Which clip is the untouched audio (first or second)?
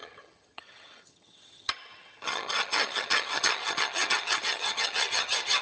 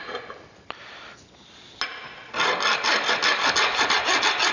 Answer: second